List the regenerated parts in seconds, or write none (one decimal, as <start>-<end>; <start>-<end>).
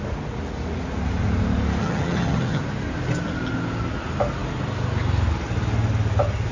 1.8-2.6